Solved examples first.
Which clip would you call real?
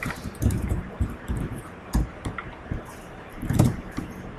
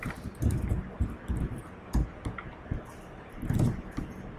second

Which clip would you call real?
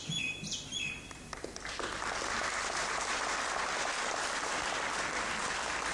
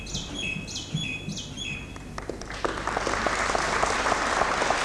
second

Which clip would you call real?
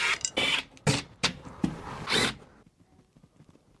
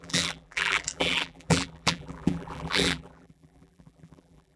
first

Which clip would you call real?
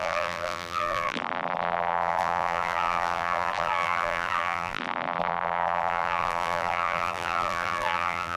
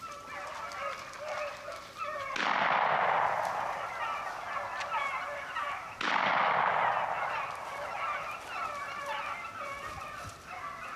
second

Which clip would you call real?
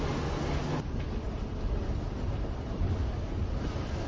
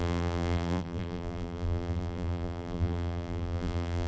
first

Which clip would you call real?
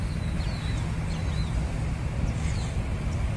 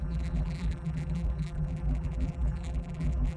first